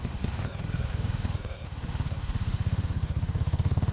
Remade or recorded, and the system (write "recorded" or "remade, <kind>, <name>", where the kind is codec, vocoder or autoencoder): remade, autoencoder, DAC-VAE